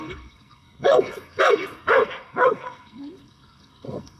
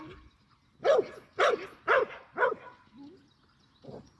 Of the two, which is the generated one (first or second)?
first